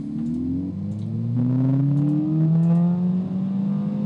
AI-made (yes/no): no